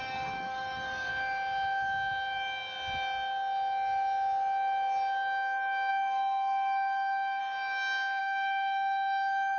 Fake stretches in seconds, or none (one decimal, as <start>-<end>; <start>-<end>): 0.0-1.1; 5.9-7.4; 8.2-9.6

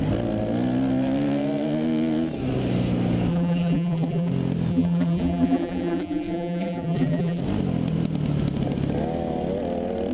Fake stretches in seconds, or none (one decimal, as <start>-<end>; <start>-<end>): 3.3-4.3; 4.7-7.4

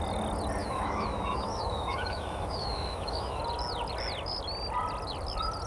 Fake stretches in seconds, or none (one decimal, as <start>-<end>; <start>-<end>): 0.6-3.4

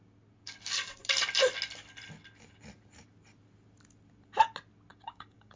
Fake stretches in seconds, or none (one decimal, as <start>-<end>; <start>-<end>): 4.9-5.6

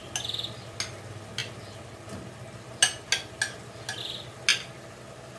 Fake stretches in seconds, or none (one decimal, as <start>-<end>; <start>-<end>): none